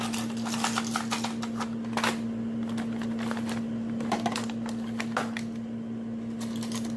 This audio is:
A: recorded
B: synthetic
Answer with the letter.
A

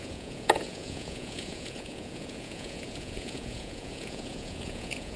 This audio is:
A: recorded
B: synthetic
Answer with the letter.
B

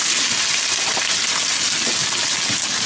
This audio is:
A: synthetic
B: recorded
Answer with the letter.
B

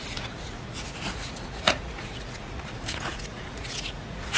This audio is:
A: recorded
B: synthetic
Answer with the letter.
B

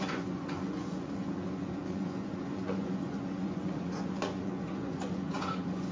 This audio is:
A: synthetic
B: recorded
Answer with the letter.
A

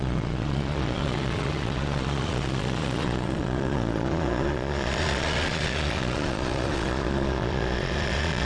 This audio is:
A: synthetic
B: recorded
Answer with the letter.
A